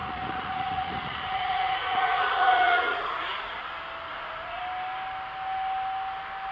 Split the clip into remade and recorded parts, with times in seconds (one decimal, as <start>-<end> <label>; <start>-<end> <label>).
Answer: 0.0-3.6 remade; 3.6-4.1 recorded; 4.1-4.6 remade; 4.6-6.5 recorded